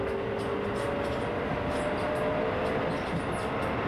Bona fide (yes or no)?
yes